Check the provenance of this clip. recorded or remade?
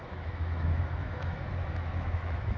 remade